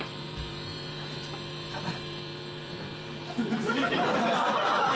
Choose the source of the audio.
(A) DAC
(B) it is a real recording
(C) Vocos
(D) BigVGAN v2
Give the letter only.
D